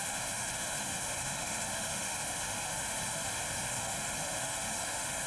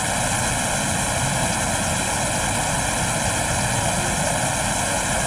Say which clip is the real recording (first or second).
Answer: second